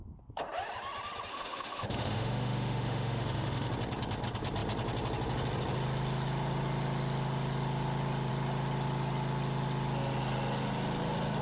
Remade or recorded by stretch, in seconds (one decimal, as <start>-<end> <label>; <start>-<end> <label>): 0.0-1.3 recorded; 1.3-3.7 remade; 3.7-11.4 recorded